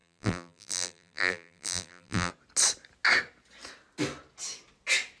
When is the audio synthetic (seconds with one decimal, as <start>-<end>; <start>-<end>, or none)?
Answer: 0.0-2.3